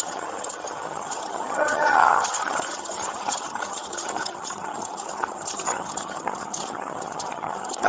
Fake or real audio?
fake